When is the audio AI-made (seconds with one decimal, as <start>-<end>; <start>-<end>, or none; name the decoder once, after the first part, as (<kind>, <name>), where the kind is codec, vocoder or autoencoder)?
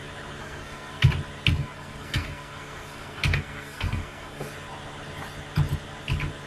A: 0.4-1.1 (codec, SNAC); 1.6-4.5